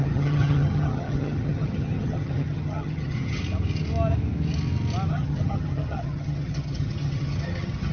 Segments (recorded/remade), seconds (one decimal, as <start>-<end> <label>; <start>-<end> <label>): 0.0-3.4 remade; 3.4-5.1 recorded; 5.1-7.9 remade

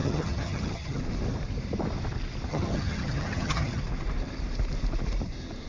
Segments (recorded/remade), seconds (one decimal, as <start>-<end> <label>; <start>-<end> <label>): 0.0-1.0 remade; 1.0-2.5 recorded; 2.5-3.8 remade; 3.8-5.7 recorded

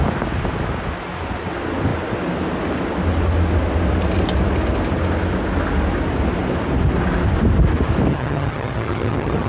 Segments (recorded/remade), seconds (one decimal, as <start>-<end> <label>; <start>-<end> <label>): 0.0-8.1 recorded; 8.1-9.5 remade

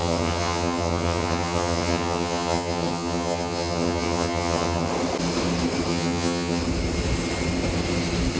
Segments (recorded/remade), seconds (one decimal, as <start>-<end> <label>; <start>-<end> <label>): 0.0-4.9 remade; 4.9-5.9 recorded; 5.9-6.6 remade; 6.6-8.4 recorded

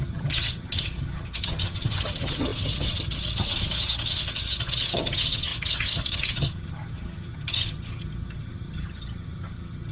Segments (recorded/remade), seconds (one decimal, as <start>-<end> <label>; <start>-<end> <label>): 0.0-9.9 remade